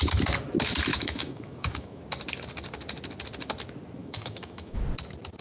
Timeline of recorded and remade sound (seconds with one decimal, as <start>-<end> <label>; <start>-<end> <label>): 0.0-0.9 recorded; 0.9-2.0 remade; 2.0-4.0 recorded; 4.0-4.8 remade; 4.8-5.4 recorded